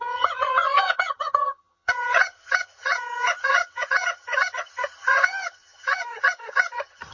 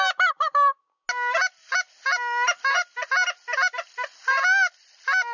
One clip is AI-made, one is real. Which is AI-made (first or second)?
first